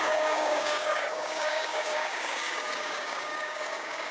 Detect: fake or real fake